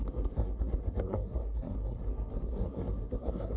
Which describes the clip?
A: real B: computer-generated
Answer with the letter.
B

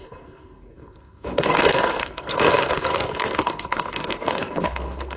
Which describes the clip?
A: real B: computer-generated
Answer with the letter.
B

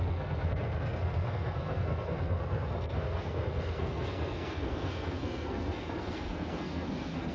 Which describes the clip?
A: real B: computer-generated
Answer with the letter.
B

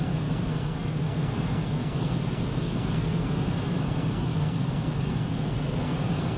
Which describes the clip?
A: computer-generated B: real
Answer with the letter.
A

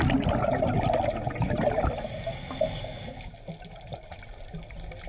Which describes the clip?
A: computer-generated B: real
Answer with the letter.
B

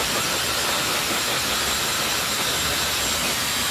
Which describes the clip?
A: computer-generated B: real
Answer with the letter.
B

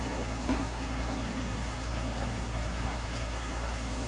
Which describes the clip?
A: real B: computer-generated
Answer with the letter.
B